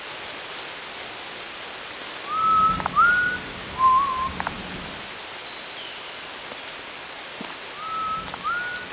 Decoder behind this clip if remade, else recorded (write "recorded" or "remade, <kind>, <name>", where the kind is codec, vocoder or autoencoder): recorded